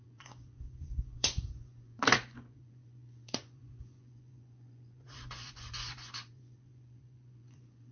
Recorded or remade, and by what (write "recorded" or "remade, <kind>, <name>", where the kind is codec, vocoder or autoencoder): remade, vocoder, Vocos